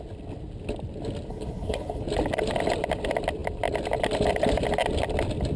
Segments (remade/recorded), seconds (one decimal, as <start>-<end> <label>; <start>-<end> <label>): 0.0-1.3 recorded; 1.3-2.0 remade; 2.0-5.6 recorded